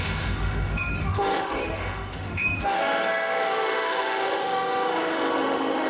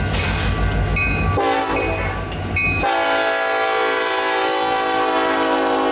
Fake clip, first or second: first